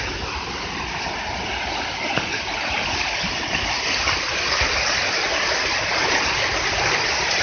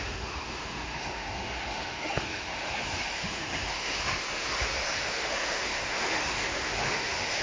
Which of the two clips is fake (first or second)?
second